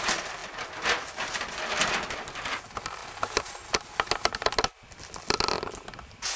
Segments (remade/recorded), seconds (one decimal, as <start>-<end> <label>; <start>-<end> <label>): 0.0-6.4 recorded